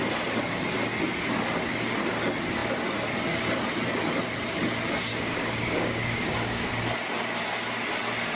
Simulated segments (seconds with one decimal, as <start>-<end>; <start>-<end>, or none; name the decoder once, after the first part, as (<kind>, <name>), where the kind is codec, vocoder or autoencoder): 5.1-6.7 (codec, DAC)